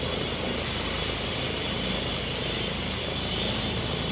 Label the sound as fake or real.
real